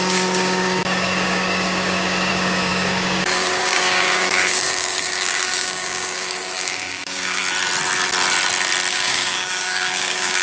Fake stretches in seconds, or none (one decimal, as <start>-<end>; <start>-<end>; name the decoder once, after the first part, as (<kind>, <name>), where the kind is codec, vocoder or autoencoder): 0.0-7.4 (codec, DAC); 8.9-10.4

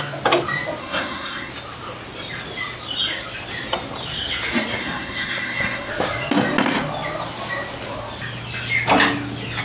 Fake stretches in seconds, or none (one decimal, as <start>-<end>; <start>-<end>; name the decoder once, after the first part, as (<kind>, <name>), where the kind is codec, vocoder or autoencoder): 0.8-1.5 (codec, SNAC); 4.8-5.9